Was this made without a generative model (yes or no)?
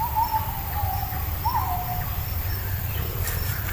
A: yes